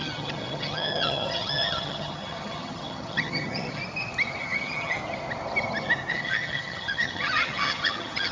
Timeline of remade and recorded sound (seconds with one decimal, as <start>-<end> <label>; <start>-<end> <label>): 0.0-3.8 remade; 3.8-4.4 recorded; 4.4-5.0 remade; 5.0-6.1 recorded; 6.1-8.3 remade

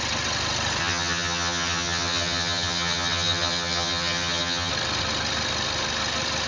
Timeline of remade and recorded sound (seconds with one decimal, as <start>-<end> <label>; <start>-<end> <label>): 0.0-0.8 recorded; 0.8-4.7 remade; 4.7-6.5 recorded

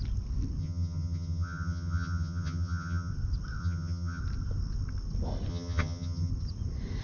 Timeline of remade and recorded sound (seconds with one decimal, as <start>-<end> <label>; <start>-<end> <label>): 0.0-0.6 recorded; 0.6-3.1 remade; 3.1-3.6 recorded; 3.6-4.2 remade; 4.2-5.5 recorded; 5.5-6.3 remade; 6.3-7.0 recorded

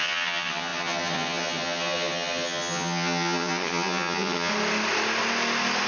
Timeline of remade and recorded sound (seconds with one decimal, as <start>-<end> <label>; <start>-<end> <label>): 0.0-4.5 remade; 4.5-5.9 recorded

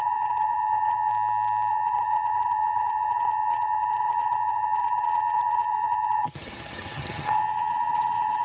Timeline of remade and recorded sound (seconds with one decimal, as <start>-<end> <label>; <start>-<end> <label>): 0.0-1.1 remade; 1.1-1.7 recorded; 1.7-8.4 remade

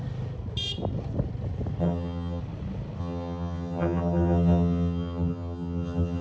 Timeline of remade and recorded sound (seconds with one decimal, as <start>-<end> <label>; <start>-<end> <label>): 0.0-1.8 recorded; 1.8-2.4 remade; 2.4-3.0 recorded; 3.0-6.2 remade

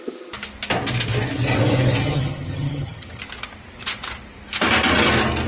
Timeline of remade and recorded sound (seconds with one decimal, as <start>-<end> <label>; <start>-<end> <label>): 0.0-2.0 recorded; 2.0-3.2 remade; 3.2-5.5 recorded